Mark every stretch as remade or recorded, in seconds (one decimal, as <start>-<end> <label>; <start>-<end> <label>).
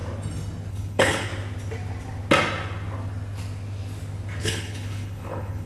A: 0.0-0.7 recorded; 0.7-1.3 remade; 1.3-4.4 recorded; 4.4-5.7 remade